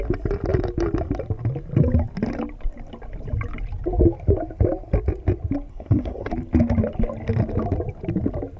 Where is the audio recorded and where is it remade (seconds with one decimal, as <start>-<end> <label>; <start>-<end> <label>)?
0.0-5.7 recorded; 5.7-6.3 remade; 6.3-8.6 recorded